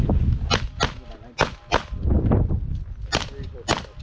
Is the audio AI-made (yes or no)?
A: no